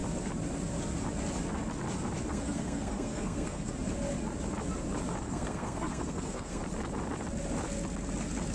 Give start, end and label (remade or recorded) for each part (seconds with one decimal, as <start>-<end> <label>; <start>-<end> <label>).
0.0-2.3 recorded; 2.3-3.7 remade; 3.7-5.1 recorded; 5.1-6.6 remade; 6.6-8.5 recorded